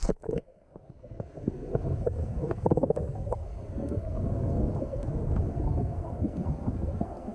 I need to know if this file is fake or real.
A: fake